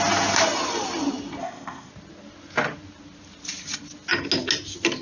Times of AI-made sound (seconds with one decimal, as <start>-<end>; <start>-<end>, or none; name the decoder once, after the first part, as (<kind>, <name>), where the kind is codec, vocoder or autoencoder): 1.4-1.9 (codec, ZipCodec)